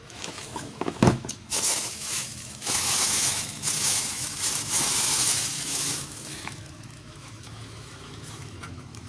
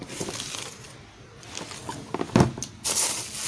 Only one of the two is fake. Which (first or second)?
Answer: first